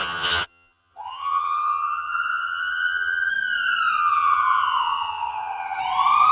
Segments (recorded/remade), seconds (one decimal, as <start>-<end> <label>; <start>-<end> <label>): 0.0-3.3 remade; 3.3-4.0 recorded; 4.0-5.8 remade; 5.8-6.3 recorded